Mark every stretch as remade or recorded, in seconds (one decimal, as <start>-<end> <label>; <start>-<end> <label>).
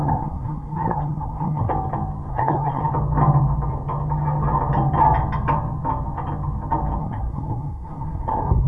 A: 0.0-1.7 remade; 1.7-2.3 recorded; 2.3-2.8 remade; 2.8-7.0 recorded; 7.0-8.7 remade